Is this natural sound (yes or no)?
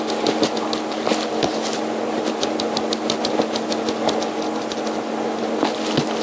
yes